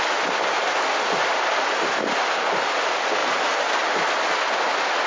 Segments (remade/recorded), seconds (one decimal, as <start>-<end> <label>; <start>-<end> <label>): 0.0-5.1 recorded